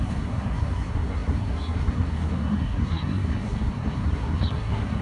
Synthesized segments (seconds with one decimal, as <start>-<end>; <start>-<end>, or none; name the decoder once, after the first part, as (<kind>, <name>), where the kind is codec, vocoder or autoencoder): 0.0-5.0 (codec, SNAC)